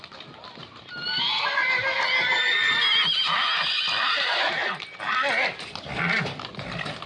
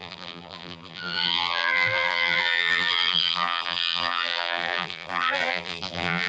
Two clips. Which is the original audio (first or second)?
first